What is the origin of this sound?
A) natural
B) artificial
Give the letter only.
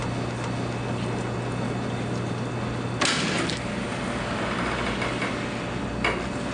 A